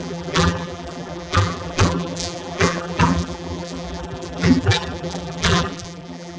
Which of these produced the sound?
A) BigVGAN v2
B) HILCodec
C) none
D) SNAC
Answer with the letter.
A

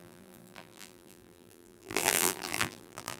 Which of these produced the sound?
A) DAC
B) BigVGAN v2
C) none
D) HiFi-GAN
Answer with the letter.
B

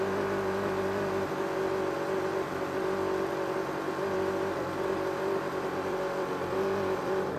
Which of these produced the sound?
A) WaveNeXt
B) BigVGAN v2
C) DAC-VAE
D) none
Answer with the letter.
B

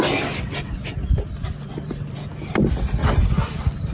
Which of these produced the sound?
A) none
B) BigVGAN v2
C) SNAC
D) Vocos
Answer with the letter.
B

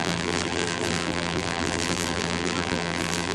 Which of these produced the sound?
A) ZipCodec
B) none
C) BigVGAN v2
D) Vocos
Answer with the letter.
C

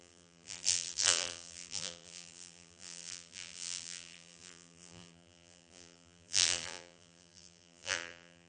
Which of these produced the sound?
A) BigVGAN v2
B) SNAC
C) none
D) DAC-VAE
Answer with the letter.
A